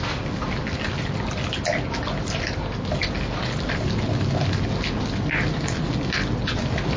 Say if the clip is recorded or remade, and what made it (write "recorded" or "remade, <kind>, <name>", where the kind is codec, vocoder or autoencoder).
recorded